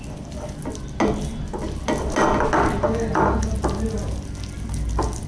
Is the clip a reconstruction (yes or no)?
no